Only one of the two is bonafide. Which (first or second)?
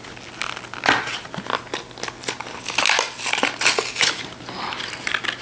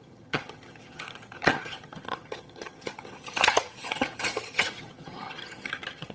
first